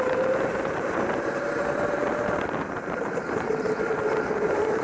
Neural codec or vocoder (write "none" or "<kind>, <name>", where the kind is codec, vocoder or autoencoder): none